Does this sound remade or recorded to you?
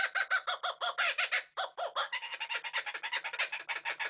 remade